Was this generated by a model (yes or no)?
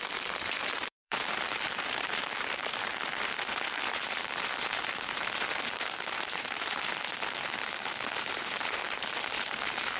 yes